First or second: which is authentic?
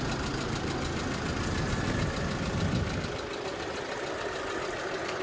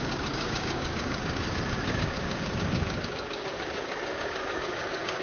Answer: first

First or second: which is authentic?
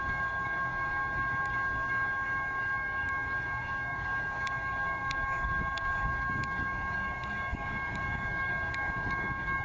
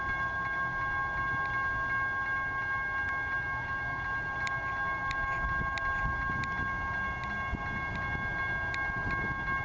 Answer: second